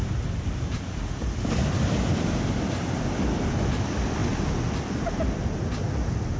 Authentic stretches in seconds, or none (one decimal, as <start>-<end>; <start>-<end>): 0.0-6.4